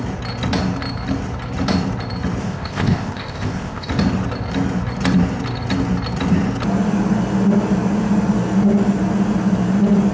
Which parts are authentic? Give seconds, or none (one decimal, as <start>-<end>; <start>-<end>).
0.0-2.4; 3.9-10.1